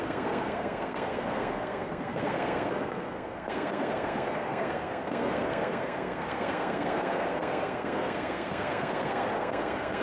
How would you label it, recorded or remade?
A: remade